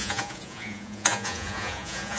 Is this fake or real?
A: fake